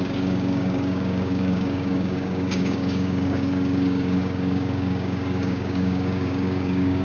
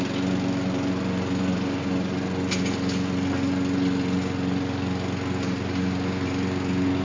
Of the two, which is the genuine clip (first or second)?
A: second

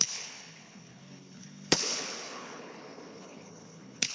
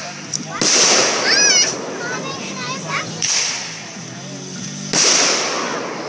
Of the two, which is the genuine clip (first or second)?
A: second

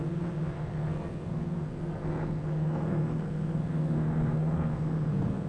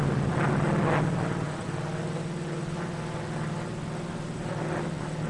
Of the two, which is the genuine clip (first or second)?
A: second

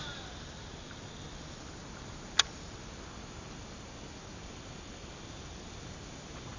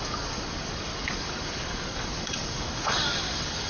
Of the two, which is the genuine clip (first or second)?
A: first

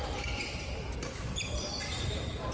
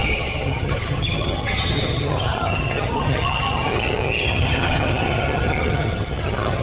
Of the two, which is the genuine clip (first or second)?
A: first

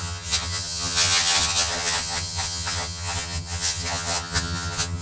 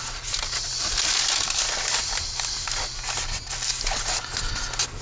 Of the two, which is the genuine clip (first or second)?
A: second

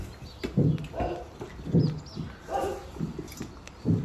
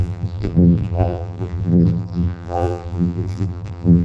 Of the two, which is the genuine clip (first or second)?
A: first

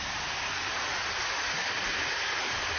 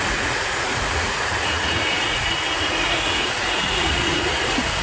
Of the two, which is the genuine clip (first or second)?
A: first